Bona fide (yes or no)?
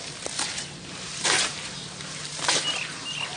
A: yes